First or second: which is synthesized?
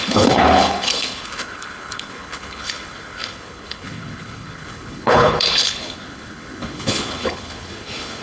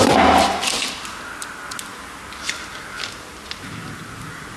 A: first